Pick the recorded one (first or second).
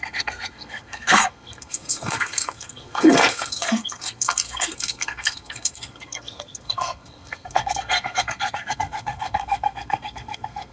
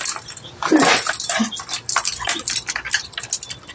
second